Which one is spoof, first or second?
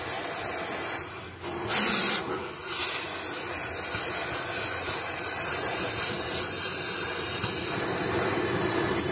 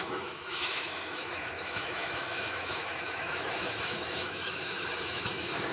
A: second